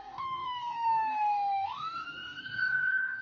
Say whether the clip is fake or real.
fake